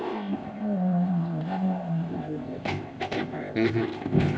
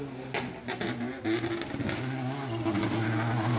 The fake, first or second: first